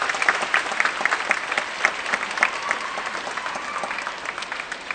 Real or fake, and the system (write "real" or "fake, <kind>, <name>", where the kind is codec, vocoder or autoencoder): real